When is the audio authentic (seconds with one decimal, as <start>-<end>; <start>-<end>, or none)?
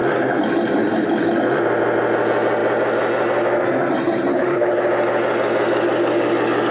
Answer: 0.0-4.3; 4.9-6.7